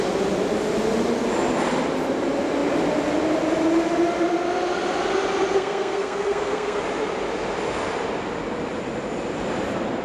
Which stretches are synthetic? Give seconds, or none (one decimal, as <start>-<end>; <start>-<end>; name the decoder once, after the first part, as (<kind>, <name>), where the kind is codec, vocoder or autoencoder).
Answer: 5.5-6.8 (codec, SNAC)